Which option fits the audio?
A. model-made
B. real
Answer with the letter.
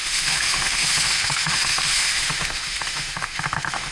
A